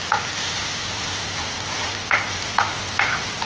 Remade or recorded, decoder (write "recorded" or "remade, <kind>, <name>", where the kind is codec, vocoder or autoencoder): recorded